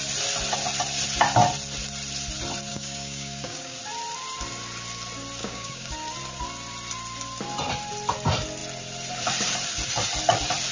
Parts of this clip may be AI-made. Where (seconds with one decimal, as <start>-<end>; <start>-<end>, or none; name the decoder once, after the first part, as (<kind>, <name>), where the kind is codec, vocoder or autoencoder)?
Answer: 2.7-3.8 (codec, DAC); 5.4-5.9